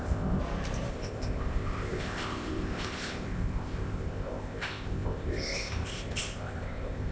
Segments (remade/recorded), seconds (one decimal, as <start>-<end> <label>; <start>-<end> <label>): 0.0-0.4 remade; 0.4-0.9 recorded; 0.9-7.1 remade

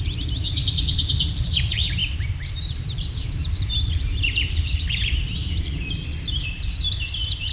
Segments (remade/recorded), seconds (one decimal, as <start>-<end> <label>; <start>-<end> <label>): 0.0-5.4 remade; 5.4-6.5 recorded; 6.5-7.5 remade

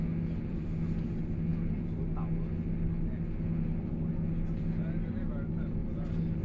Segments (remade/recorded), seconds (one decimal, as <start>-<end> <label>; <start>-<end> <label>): 0.0-6.4 recorded

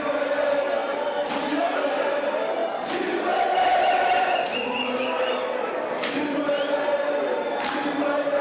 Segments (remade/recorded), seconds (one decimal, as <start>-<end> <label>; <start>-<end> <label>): 0.0-8.4 recorded

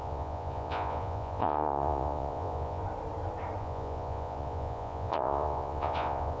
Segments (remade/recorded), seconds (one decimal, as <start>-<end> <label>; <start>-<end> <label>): 0.0-2.8 remade; 2.8-3.6 recorded; 3.6-6.4 remade

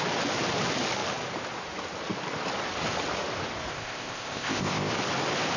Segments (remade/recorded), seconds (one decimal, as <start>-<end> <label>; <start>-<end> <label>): 0.0-3.7 recorded; 3.7-4.9 remade; 4.9-5.6 recorded

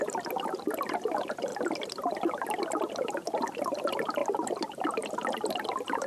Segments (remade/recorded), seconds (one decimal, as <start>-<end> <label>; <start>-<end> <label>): 0.0-6.1 recorded

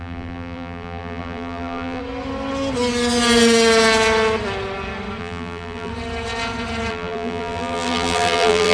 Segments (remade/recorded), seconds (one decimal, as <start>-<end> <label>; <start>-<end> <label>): 0.0-2.0 remade; 2.0-5.2 recorded; 5.2-5.9 remade; 5.9-6.9 recorded; 6.9-8.7 remade